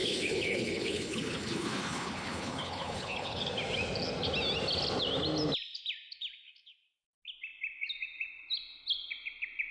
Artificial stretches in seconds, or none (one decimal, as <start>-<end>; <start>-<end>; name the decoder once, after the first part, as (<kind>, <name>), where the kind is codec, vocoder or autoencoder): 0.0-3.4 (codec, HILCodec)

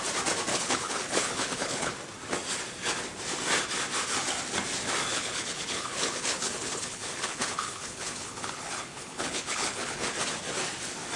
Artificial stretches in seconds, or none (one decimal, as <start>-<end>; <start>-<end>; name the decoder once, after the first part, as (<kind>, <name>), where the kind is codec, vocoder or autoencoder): 0.5-1.9 (codec, HILCodec); 5.1-10.1

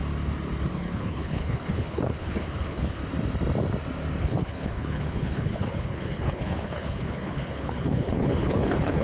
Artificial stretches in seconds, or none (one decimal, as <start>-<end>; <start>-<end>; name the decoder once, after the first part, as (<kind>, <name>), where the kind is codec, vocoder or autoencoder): 0.7-3.0 (codec, HILCodec); 4.2-9.0

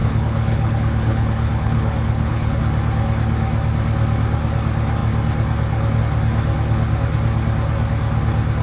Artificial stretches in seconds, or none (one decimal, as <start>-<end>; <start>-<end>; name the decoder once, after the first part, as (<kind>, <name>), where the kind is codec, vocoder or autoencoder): 0.0-2.6 (codec, HILCodec)

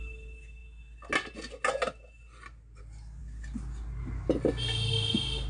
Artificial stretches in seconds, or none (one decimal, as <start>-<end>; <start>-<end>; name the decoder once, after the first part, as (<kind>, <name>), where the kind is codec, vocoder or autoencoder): none